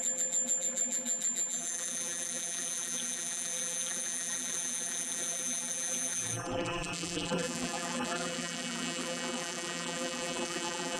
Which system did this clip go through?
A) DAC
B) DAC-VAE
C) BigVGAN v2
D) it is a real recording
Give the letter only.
C